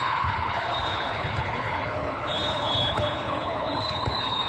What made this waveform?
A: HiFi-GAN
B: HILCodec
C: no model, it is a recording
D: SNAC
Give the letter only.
B